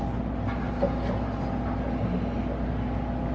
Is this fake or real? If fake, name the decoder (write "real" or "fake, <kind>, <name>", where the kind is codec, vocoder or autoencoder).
real